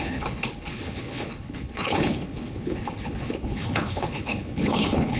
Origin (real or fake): fake